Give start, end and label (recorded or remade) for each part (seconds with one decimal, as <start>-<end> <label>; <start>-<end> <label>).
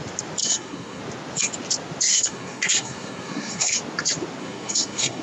0.0-0.4 recorded; 0.4-1.0 remade; 1.0-2.1 recorded; 2.1-3.8 remade; 3.8-4.4 recorded; 4.4-5.2 remade